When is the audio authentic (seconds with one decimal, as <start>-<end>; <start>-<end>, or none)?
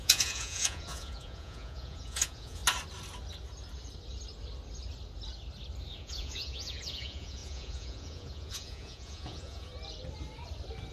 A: 2.6-6.0; 9.7-10.9